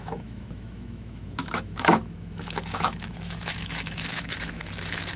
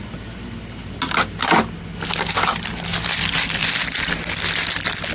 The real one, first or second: second